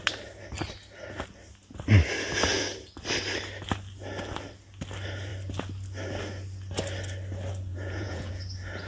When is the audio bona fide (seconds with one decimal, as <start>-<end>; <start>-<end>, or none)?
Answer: 0.0-7.7; 8.3-8.9